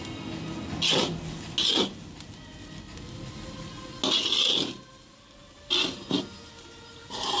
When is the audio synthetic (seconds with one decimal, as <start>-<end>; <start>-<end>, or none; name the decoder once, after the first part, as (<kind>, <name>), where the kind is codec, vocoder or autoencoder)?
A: none